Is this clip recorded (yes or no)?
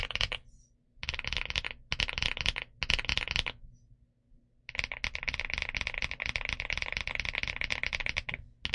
yes